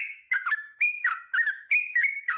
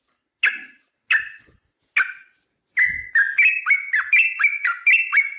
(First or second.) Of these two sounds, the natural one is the second